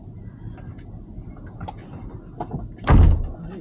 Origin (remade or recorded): recorded